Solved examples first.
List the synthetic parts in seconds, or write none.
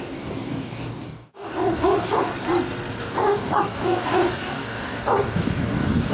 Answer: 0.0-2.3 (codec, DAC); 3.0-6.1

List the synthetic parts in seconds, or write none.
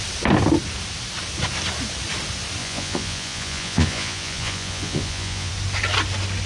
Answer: 2.6-5.5 (vocoder, Vocos)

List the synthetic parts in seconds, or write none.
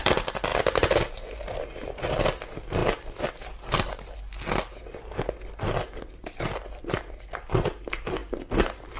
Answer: none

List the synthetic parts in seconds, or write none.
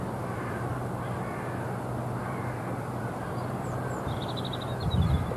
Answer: 0.0-0.7 (vocoder, BigVGAN v2); 2.2-5.4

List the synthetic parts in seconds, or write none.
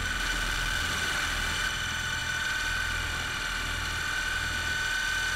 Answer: none